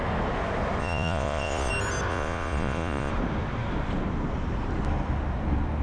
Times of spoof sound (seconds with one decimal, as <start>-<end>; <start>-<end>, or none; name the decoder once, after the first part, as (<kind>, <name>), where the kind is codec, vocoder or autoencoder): 0.8-1.7 (vocoder, Vocos); 2.1-3.1